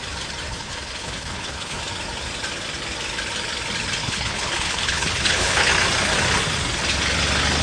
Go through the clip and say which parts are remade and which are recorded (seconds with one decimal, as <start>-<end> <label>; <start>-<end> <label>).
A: 0.0-0.5 recorded; 0.5-1.8 remade; 1.8-4.0 recorded; 4.0-5.7 remade; 5.7-7.6 recorded

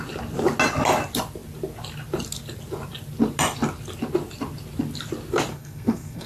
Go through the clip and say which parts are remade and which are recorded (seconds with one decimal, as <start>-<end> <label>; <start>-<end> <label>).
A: 0.0-5.5 recorded; 5.5-6.3 remade

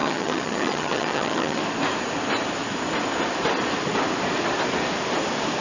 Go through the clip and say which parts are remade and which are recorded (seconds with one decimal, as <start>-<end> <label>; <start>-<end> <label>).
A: 0.0-1.6 remade; 1.6-5.6 recorded